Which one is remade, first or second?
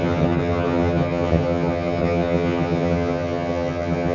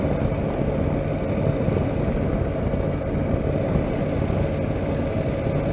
first